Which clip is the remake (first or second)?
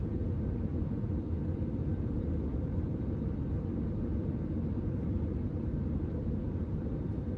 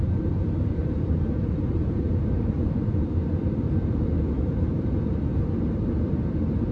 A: second